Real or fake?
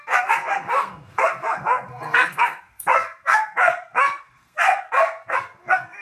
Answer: fake